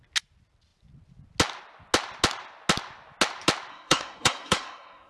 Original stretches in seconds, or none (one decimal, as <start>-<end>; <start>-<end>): 0.0-3.7